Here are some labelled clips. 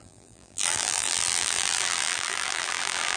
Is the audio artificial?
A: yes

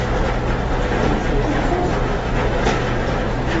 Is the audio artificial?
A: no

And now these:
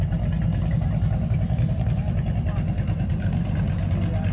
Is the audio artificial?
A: no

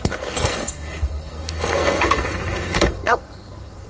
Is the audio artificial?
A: yes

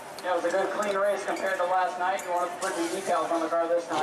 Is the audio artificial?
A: no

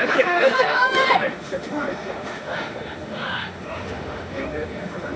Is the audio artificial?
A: yes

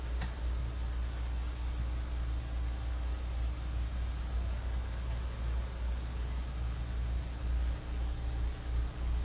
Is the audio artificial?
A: no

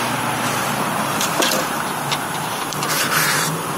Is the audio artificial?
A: yes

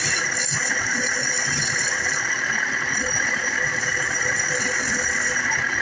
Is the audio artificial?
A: no